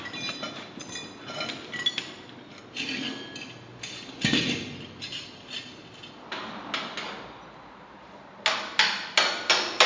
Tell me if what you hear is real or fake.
real